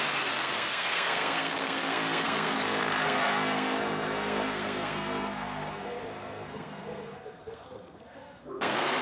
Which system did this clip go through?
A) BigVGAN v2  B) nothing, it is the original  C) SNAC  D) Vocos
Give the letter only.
C